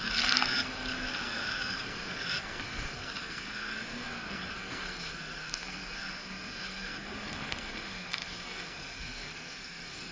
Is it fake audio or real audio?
fake